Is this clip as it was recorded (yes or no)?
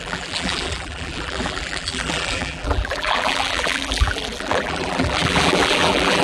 no